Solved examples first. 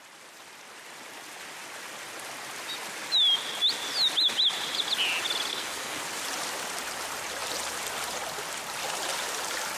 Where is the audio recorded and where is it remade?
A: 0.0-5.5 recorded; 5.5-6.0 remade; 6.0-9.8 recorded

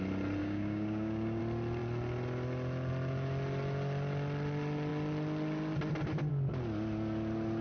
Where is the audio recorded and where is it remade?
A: 0.0-0.4 recorded; 0.4-1.4 remade; 1.4-7.6 recorded

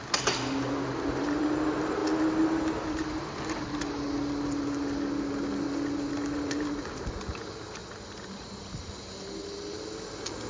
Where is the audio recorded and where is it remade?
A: 0.0-10.5 recorded

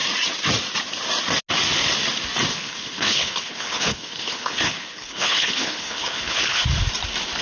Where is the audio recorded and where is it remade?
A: 0.0-2.5 recorded; 2.5-6.6 remade; 6.6-7.4 recorded

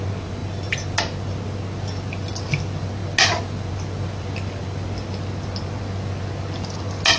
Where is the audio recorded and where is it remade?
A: 0.0-7.2 recorded

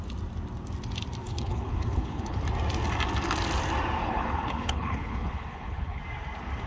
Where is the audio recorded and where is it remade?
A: 0.0-1.2 recorded; 1.2-2.4 remade; 2.4-4.0 recorded; 4.0-6.0 remade; 6.0-6.7 recorded

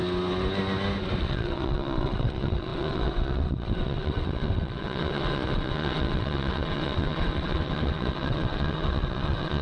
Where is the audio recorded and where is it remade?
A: 0.0-1.2 recorded; 1.2-9.6 remade

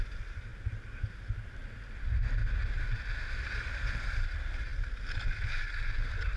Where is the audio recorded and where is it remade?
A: 0.0-6.4 recorded